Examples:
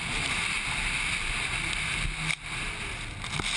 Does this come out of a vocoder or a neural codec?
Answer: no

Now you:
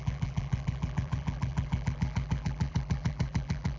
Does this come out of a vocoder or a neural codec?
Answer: yes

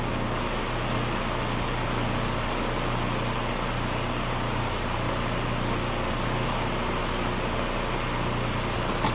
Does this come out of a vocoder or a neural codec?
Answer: no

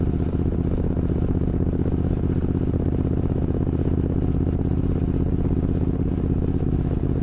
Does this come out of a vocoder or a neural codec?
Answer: no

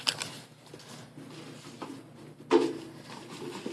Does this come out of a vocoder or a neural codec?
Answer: no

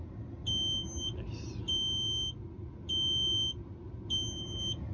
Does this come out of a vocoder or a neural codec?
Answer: no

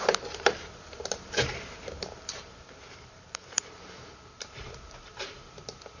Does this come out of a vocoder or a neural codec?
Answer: yes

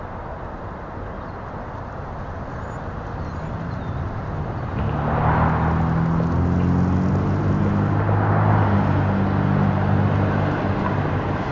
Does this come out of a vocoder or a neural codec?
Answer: no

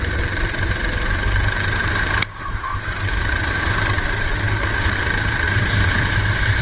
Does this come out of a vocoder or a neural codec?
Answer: yes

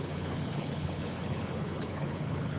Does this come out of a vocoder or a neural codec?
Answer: yes